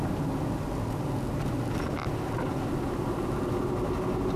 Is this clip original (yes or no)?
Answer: yes